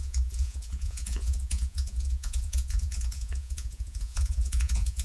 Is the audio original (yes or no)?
no